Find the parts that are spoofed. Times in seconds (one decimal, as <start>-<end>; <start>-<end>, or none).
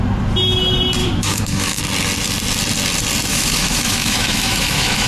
1.0-1.8; 3.3-5.1